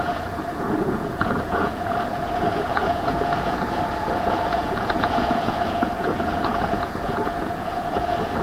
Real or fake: fake